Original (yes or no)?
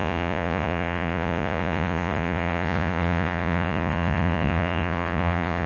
no